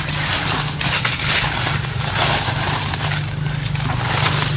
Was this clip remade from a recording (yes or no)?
no